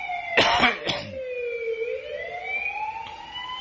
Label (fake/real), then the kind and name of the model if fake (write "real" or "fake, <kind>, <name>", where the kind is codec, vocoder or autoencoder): real